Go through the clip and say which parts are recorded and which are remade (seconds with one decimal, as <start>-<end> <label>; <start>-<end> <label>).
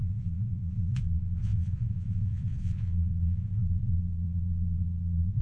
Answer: 0.0-5.4 remade